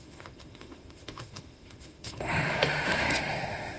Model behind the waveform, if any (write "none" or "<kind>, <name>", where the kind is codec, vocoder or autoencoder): autoencoder, DAC-VAE